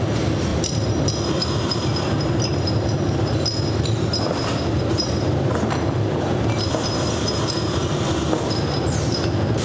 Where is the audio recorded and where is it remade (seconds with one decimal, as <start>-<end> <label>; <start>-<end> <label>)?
0.0-0.5 recorded; 0.5-1.1 remade; 1.1-4.4 recorded; 4.4-6.7 remade; 6.7-7.8 recorded; 7.8-8.5 remade; 8.5-9.6 recorded